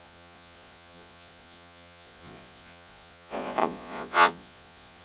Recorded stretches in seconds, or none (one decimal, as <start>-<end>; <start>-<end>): none